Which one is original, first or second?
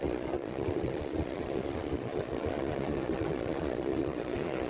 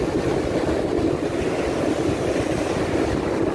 second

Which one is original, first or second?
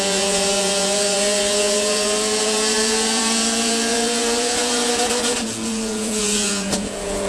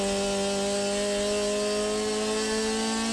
second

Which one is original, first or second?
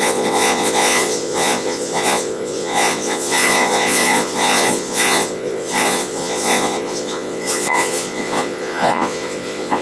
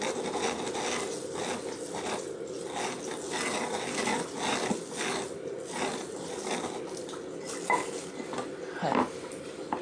second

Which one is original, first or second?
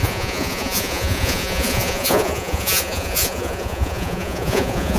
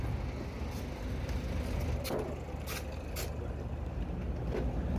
second